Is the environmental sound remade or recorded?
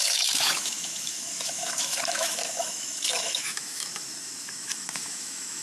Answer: remade